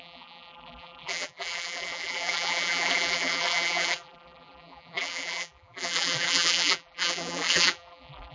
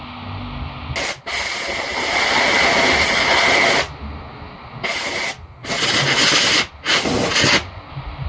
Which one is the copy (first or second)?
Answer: first